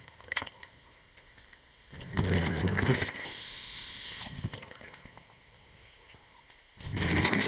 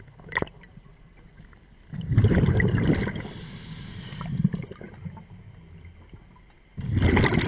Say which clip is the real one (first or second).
second